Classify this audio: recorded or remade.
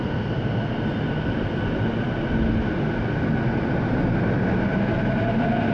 recorded